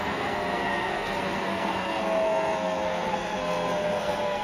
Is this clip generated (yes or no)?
yes